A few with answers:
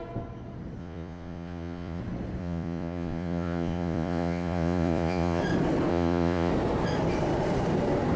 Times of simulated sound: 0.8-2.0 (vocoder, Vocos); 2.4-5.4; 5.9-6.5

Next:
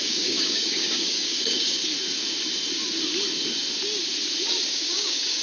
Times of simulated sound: 0.0-1.8 (codec, DAC); 4.7-5.4

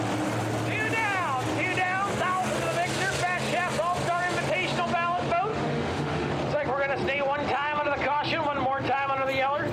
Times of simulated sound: 5.5-6.3 (autoencoder, DAC-VAE)

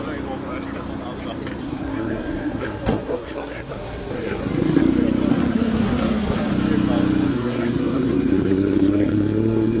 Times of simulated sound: 1.6-4.8 (codec, SNAC); 5.3-6.5; 7.3-9.8

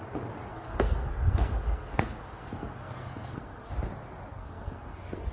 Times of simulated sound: 0.5-3.7 (codec, SNAC); 4.3-5.3

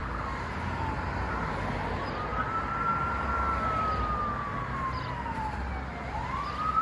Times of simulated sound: none